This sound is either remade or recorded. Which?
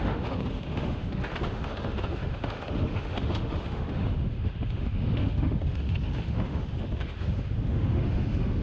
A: remade